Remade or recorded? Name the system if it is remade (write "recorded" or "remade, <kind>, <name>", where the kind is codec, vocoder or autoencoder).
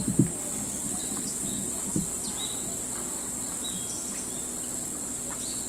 recorded